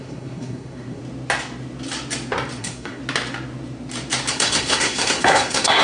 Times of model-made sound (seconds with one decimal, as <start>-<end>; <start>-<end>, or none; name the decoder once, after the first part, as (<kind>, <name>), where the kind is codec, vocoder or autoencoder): 0.0-1.0 (codec, SNAC); 2.6-3.0; 4.3-5.8